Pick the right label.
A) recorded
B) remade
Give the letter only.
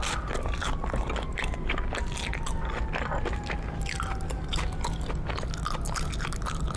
A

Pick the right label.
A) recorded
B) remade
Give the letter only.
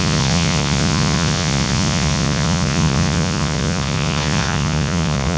B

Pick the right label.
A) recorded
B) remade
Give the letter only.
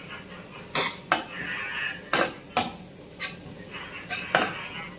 A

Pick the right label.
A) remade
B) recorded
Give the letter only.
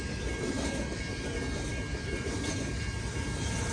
B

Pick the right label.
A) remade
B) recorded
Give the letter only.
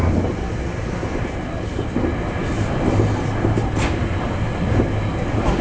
B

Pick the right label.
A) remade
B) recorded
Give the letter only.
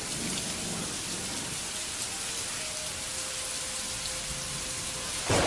B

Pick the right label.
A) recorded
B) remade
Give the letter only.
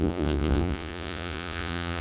B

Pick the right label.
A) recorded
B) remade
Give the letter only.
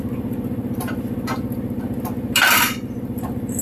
A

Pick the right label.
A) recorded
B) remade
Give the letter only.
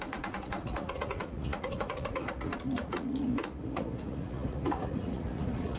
B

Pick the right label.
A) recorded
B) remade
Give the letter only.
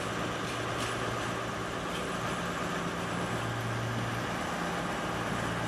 A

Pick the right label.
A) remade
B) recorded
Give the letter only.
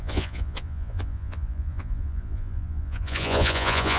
A